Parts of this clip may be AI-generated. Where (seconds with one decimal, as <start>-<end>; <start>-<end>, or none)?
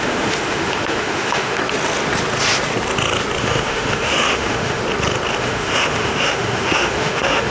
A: 0.0-1.6; 3.4-4.8; 5.4-7.5